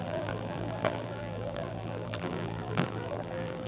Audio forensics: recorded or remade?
remade